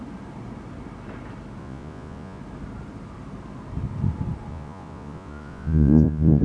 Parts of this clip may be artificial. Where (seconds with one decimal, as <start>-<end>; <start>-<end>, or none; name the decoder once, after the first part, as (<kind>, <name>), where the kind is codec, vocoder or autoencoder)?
1.6-2.4 (vocoder, Vocos); 4.5-6.4

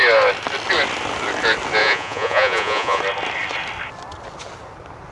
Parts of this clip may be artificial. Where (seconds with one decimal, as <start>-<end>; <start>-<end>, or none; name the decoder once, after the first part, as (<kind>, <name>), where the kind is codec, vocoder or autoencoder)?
1.8-3.0 (vocoder, Vocos)

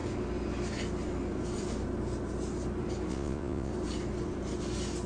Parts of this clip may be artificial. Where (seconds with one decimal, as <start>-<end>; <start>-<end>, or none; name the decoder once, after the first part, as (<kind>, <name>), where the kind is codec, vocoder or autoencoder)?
3.1-3.7 (vocoder, Vocos)

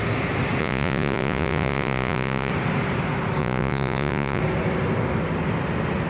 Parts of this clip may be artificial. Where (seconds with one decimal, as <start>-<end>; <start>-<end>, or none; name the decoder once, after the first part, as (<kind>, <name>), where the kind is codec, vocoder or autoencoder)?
0.6-2.5 (vocoder, Vocos); 3.4-4.4